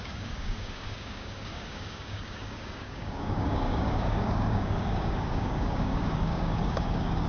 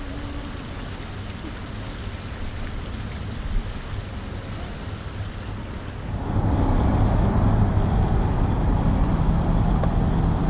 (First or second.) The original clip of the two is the second